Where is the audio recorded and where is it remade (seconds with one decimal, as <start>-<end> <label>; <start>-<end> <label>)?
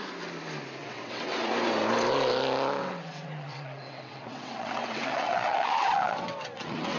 0.0-0.8 recorded; 0.8-1.5 remade; 1.5-2.8 recorded; 2.8-7.0 remade